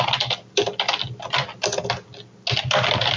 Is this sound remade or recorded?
recorded